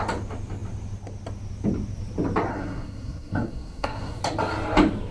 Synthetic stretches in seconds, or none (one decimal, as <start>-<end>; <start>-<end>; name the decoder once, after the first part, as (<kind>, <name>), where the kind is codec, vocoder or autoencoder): 2.5-4.2 (codec, SNAC)